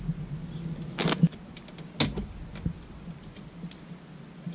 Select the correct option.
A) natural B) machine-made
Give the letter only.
A